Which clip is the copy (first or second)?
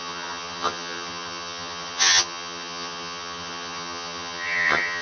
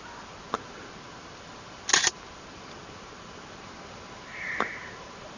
first